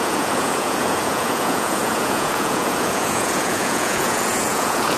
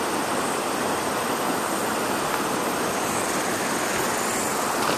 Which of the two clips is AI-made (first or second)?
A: first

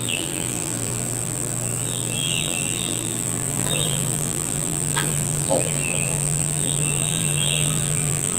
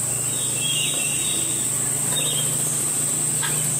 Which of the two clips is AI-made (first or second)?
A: first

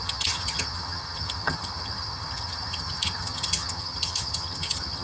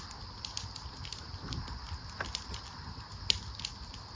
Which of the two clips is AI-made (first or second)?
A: first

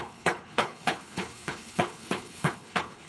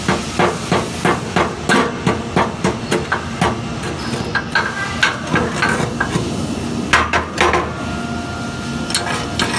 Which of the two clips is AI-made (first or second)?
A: first